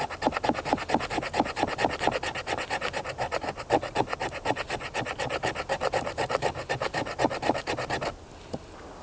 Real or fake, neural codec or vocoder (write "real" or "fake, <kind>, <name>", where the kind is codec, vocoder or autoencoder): real